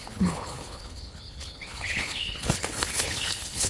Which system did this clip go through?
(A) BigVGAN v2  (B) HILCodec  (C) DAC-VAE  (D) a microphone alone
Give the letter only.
B